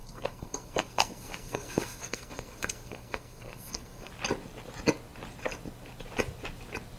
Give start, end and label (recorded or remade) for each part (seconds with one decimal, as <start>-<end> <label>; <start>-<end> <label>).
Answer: 0.0-4.1 remade; 4.1-7.0 recorded